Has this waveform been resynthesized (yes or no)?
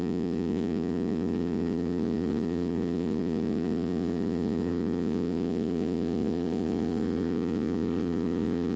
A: yes